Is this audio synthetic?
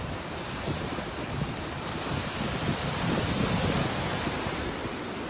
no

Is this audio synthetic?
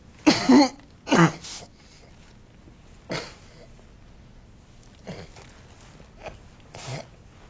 no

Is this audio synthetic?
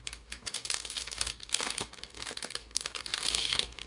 yes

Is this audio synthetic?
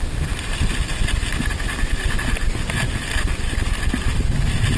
no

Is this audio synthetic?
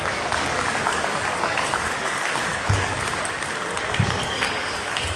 yes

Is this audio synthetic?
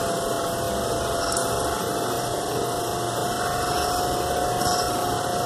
no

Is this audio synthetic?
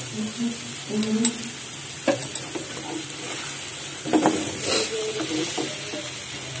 no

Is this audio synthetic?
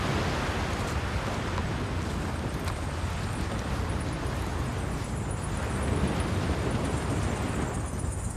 no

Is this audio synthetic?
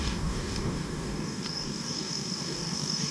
yes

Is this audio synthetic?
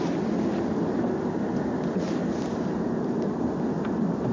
no